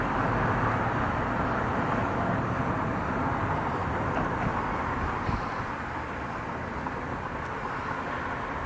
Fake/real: real